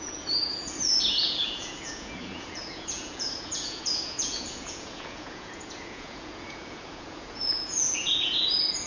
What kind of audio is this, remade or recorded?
remade